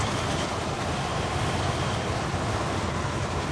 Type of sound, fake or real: real